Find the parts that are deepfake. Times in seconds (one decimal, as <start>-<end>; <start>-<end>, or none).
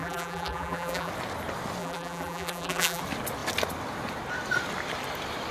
0.0-1.1; 1.8-3.0